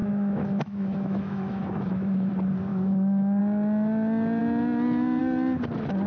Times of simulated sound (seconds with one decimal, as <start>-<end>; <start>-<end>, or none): 0.0-2.3; 2.7-3.4

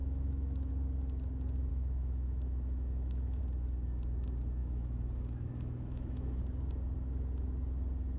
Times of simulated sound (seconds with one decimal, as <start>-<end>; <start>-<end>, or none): 0.0-0.7; 1.7-3.4; 4.6-6.4

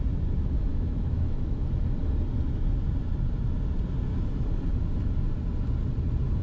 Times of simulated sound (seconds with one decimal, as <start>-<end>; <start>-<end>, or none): 0.7-1.7